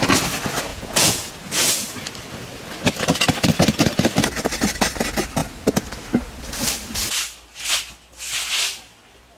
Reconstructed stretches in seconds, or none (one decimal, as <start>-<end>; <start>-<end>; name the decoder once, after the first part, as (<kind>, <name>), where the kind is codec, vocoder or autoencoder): 0.7-1.3 (vocoder, Vocos)